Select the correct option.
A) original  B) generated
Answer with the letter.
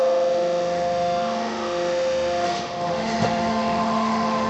B